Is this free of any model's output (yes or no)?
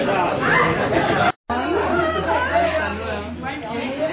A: yes